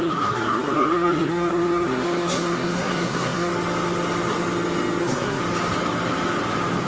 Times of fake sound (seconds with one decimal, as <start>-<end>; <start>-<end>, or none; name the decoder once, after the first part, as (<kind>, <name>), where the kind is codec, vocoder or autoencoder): 0.0-3.5 (codec, SNAC); 5.0-5.4